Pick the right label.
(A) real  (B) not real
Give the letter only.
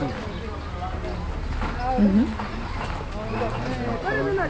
A